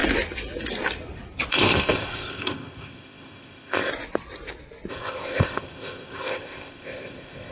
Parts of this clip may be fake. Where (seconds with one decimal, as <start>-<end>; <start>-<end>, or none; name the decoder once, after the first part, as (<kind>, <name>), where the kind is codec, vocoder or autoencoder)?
1.5-3.9 (codec, ZipCodec); 4.9-7.5